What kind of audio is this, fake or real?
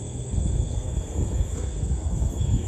fake